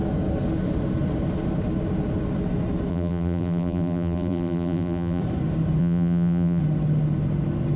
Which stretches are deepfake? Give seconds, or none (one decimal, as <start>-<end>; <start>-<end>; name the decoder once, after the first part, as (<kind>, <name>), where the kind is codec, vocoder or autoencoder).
2.9-5.2 (vocoder, BigVGAN v2); 5.8-6.6